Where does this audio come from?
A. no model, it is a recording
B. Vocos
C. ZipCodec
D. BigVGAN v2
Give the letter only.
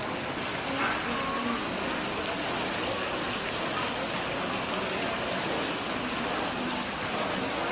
A